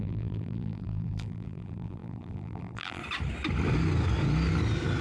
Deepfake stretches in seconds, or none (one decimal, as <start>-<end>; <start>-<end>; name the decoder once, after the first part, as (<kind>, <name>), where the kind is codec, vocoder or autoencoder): 0.0-3.0 (vocoder, BigVGAN v2)

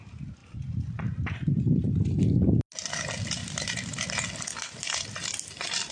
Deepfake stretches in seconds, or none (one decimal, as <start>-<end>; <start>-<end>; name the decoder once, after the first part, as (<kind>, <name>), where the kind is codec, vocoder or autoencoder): 0.4-1.9 (vocoder, BigVGAN v2); 2.8-4.2

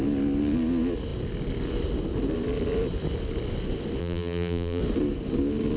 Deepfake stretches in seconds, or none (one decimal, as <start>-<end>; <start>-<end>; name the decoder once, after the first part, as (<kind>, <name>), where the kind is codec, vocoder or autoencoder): 4.0-4.8 (vocoder, BigVGAN v2)

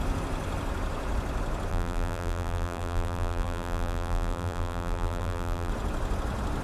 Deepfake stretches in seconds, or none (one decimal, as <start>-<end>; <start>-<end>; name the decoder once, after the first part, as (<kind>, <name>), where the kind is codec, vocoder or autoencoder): 1.7-5.7 (vocoder, BigVGAN v2)

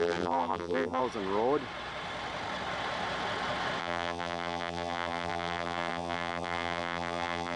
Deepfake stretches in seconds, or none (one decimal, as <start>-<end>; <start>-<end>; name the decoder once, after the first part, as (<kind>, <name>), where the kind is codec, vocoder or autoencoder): 0.0-1.0 (vocoder, BigVGAN v2); 3.8-7.6

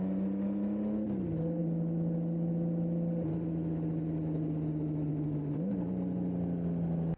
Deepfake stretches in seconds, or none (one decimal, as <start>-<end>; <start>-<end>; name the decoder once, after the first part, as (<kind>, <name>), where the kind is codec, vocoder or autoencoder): none